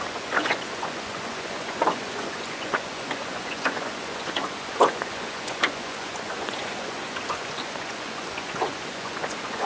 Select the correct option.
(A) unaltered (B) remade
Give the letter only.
B